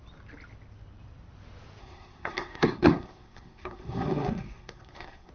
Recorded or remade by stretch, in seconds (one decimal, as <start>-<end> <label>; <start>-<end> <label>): 0.0-1.8 recorded; 1.8-5.3 remade